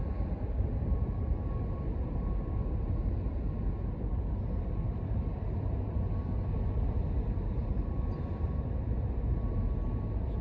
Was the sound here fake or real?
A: real